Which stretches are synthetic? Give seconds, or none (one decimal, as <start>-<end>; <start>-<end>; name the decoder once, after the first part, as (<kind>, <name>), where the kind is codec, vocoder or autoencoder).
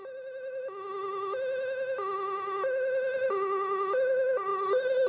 none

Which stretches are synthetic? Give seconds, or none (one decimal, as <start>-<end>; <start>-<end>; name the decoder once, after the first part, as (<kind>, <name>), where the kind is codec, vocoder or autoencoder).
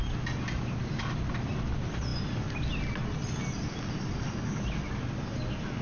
none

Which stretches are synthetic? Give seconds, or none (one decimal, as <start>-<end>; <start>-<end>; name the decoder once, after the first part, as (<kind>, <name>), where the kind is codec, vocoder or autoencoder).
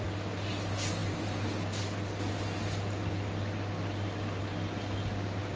none